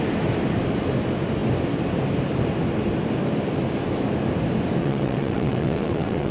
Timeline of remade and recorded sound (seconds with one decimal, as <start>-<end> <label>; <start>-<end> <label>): 0.0-4.8 recorded; 4.8-6.3 remade